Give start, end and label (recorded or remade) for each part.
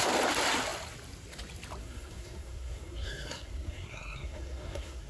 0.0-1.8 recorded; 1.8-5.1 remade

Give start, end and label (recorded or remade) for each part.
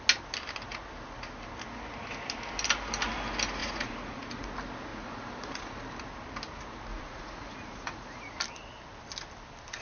0.0-3.6 recorded; 3.6-4.5 remade; 4.5-4.9 recorded; 4.9-5.8 remade; 5.8-6.9 recorded; 6.9-8.4 remade; 8.4-9.8 recorded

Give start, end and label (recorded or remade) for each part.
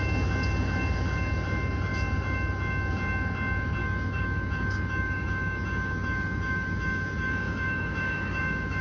0.0-3.8 recorded; 3.8-8.8 remade